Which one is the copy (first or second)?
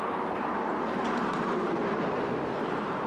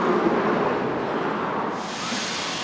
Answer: first